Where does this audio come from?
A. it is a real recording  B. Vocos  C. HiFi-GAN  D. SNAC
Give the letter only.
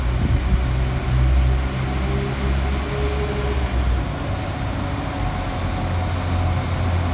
A